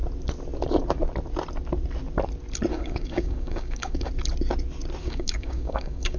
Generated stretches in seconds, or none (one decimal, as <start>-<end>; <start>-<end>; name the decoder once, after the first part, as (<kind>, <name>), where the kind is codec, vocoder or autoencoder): 2.7-4.1 (codec, DAC); 5.0-6.2